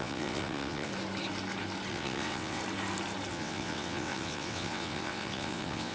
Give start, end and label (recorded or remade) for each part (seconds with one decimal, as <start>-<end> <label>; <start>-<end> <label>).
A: 0.0-0.9 remade; 0.9-1.9 recorded; 1.9-2.6 remade; 2.6-3.3 recorded; 3.3-5.9 remade